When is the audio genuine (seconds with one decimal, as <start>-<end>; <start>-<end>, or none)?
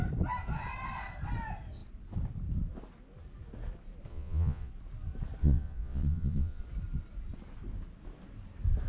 0.0-4.1; 4.7-5.4; 6.6-8.9